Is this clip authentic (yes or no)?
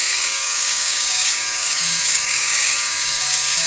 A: no